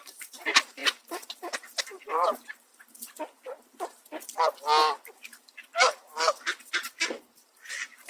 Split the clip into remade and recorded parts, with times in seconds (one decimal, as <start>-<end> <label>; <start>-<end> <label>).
0.0-2.7 remade; 2.7-5.1 recorded; 5.1-6.1 remade; 6.1-6.7 recorded; 6.7-8.1 remade